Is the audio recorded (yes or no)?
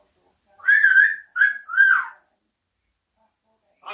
yes